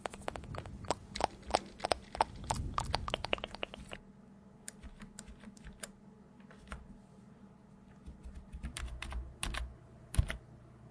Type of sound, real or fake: real